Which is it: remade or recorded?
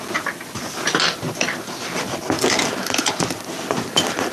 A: recorded